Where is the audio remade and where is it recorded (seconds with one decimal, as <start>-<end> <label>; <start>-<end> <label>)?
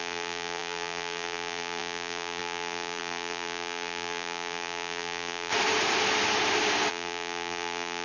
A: 0.0-5.5 remade; 5.5-6.9 recorded; 6.9-8.0 remade